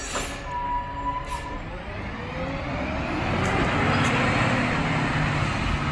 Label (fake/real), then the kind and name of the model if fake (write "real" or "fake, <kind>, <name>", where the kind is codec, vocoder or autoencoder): real